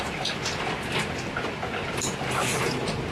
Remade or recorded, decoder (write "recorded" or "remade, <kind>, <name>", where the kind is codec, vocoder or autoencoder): recorded